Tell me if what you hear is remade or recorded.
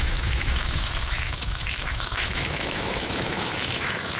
remade